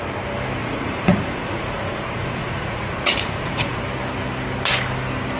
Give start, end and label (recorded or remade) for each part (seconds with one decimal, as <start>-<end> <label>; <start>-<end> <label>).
0.0-0.6 recorded; 0.6-3.8 remade; 3.8-5.4 recorded